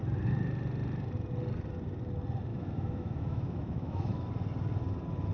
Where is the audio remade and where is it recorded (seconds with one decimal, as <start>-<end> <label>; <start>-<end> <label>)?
0.0-2.5 recorded; 2.5-4.3 remade; 4.3-5.3 recorded

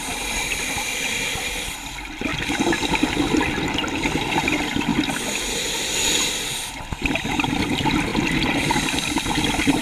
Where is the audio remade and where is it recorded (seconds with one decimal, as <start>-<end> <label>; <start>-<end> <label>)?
0.0-9.8 recorded